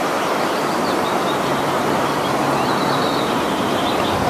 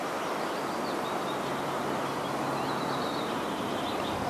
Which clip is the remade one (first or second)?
first